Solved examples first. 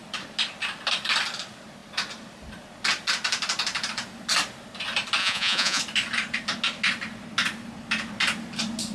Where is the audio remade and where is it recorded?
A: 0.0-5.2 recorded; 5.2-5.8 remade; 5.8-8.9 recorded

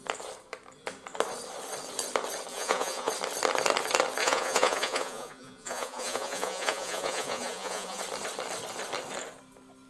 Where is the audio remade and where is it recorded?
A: 0.0-2.5 recorded; 2.5-3.1 remade; 3.1-4.2 recorded; 4.2-8.0 remade; 8.0-9.9 recorded

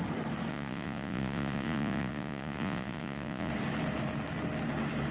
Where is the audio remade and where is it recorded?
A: 0.0-0.5 recorded; 0.5-3.5 remade; 3.5-5.1 recorded